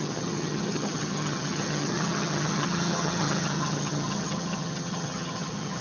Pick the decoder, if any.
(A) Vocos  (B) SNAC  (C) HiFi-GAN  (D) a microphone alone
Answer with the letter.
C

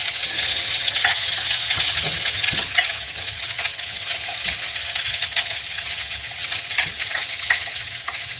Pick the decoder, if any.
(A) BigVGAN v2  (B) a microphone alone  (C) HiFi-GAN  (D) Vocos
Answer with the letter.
C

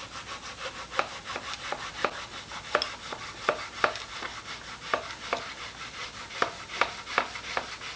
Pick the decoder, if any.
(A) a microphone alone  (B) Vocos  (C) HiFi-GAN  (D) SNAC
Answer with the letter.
A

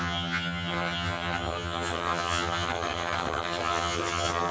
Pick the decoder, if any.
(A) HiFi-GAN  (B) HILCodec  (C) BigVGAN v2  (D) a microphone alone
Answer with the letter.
A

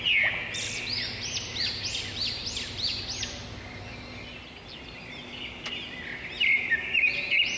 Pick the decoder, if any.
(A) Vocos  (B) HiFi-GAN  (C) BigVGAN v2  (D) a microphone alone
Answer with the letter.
D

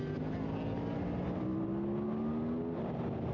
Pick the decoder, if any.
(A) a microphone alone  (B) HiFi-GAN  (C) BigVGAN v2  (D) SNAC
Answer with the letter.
A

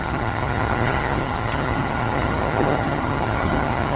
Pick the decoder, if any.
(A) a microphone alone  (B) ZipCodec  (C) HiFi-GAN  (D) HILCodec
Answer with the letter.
C